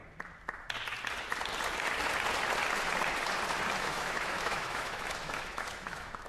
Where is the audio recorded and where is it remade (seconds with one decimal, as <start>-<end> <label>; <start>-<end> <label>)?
0.0-3.8 recorded; 3.8-6.3 remade